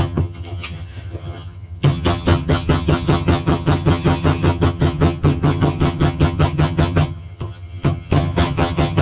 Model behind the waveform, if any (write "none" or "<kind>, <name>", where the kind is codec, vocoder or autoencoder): vocoder, HiFi-GAN